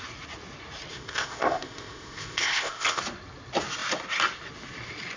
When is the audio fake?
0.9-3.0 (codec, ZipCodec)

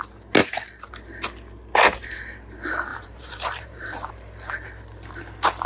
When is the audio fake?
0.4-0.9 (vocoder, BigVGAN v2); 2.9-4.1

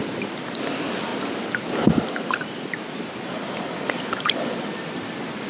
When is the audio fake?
none